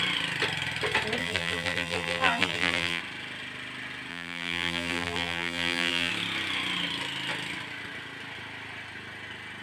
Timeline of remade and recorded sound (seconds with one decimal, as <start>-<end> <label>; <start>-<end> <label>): 0.0-1.2 recorded; 1.2-3.0 remade; 3.0-4.1 recorded; 4.1-6.1 remade; 6.1-9.6 recorded